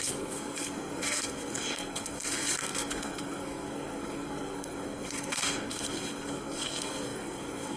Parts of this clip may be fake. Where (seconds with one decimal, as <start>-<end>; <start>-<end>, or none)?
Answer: 0.0-7.8